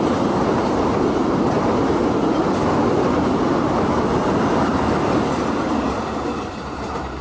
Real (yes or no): yes